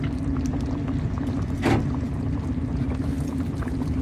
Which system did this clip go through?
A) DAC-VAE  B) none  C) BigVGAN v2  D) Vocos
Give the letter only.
B